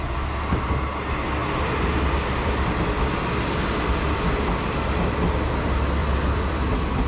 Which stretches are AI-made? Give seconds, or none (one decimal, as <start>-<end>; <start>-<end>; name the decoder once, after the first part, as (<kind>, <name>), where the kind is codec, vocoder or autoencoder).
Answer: 1.4-2.5 (vocoder, BigVGAN v2); 6.0-7.1